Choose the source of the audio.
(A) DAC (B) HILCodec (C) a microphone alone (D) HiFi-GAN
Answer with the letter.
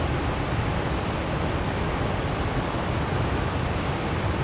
C